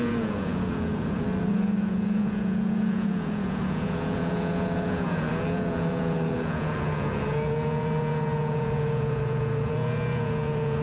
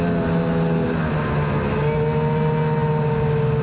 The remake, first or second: first